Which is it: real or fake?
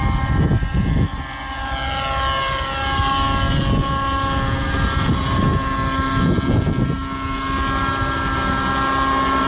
real